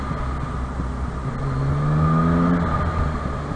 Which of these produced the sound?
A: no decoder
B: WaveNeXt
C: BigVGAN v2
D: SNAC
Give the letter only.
A